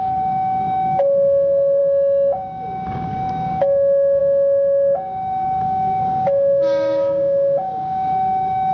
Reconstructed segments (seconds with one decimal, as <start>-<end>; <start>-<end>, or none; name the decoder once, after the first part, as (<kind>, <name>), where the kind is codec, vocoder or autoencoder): 0.0-8.7 (codec, DAC)